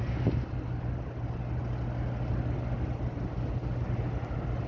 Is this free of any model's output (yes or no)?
yes